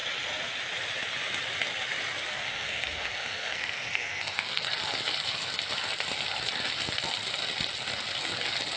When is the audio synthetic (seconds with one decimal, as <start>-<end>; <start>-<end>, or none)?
2.3-4.7